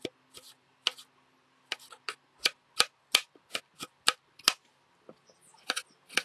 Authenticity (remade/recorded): recorded